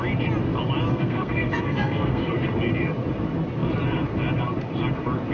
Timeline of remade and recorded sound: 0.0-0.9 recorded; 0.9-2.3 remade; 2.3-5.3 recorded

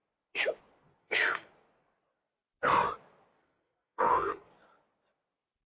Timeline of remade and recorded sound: 0.0-1.0 recorded; 1.0-1.5 remade; 1.5-3.4 recorded; 3.4-4.5 remade; 4.5-5.8 recorded

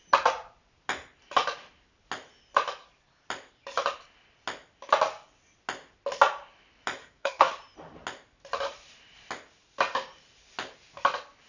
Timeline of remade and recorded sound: 0.0-7.0 recorded; 7.0-7.5 remade; 7.5-11.5 recorded

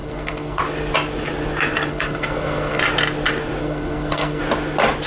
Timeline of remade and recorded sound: 0.0-0.6 remade; 0.6-1.9 recorded; 1.9-2.8 remade; 2.8-3.6 recorded; 3.6-4.4 remade; 4.4-5.1 recorded

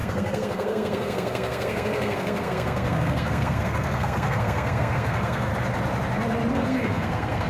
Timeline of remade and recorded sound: 0.0-5.5 remade; 5.5-6.5 recorded; 6.5-7.5 remade

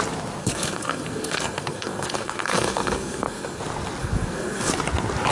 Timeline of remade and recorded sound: 0.0-0.4 recorded; 0.4-3.6 remade; 3.6-4.0 recorded; 4.0-4.7 remade; 4.7-5.3 recorded